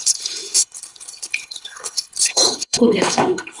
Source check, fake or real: fake